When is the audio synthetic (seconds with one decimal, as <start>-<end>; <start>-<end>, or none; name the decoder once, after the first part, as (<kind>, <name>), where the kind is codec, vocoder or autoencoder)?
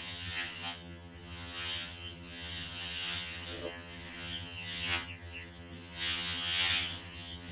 0.0-7.5 (vocoder, HiFi-GAN)